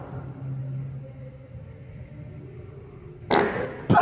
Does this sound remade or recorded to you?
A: recorded